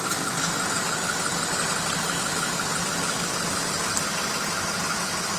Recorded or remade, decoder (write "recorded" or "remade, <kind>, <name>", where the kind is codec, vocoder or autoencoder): recorded